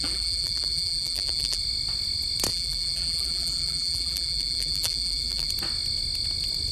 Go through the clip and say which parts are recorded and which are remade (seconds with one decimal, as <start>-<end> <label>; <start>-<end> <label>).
0.0-1.6 remade; 1.6-2.5 recorded; 2.5-5.5 remade; 5.5-6.7 recorded